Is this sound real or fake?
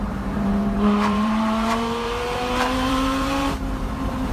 fake